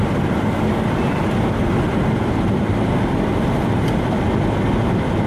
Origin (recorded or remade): recorded